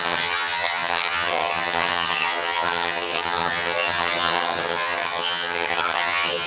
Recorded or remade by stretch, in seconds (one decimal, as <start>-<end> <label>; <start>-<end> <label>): 0.0-6.5 remade